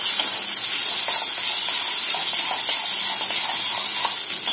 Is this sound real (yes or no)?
yes